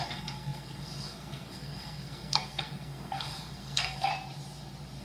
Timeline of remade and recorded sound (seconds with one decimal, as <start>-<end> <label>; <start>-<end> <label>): 0.0-4.1 remade; 4.1-5.0 recorded